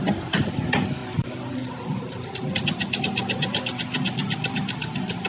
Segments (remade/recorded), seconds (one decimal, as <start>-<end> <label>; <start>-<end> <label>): 0.0-5.3 recorded